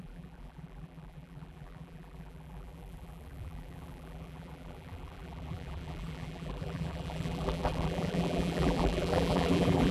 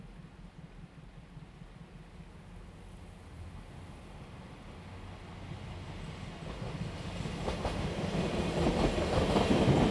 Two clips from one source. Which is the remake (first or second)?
first